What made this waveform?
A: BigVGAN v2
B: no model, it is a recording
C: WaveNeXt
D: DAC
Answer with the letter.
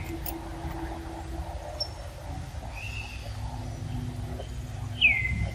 B